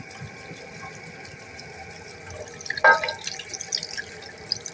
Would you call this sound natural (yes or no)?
yes